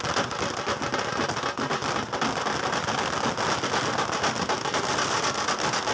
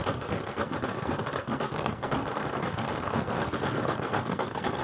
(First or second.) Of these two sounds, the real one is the first